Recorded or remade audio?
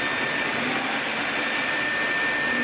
recorded